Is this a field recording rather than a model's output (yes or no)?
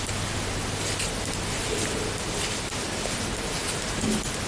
yes